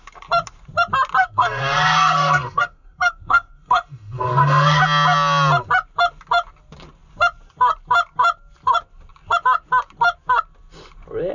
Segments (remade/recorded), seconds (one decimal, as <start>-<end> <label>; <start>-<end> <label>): 0.0-1.2 recorded; 1.2-4.8 remade; 4.8-11.3 recorded